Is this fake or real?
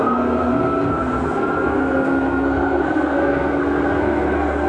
fake